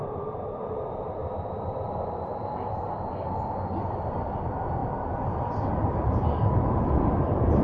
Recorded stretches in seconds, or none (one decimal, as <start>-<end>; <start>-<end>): 0.0-7.6